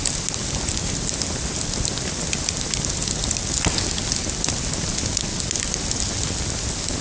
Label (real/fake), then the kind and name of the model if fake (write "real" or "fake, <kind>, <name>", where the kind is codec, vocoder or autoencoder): real